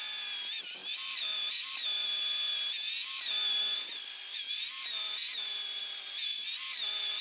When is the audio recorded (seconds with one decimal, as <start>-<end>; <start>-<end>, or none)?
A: 0.0-7.2